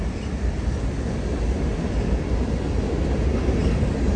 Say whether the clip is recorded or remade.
recorded